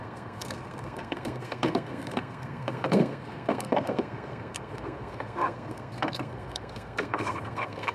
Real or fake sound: fake